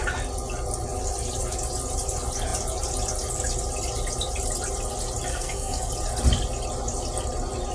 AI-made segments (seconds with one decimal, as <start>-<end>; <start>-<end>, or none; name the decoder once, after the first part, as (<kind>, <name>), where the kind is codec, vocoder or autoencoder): 5.3-5.9 (codec, SNAC)

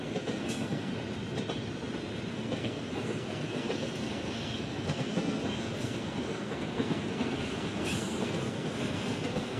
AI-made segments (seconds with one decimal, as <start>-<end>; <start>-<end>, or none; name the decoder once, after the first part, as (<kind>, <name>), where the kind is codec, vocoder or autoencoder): 0.0-0.9 (codec, SNAC); 2.3-9.6

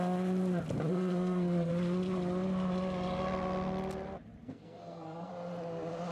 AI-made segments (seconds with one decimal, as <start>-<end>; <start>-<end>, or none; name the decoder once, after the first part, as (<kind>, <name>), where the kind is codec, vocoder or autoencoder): 0.9-1.7 (codec, SNAC); 4.4-5.3

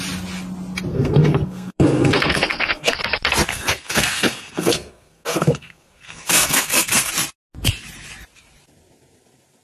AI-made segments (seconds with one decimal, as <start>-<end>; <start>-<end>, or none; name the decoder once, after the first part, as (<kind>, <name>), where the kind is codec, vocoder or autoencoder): 0.9-3.0 (codec, SNAC); 3.5-7.1